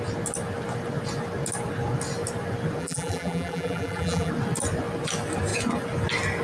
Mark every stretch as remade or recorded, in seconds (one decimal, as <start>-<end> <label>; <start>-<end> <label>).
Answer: 0.0-2.8 recorded; 2.8-4.3 remade; 4.3-6.4 recorded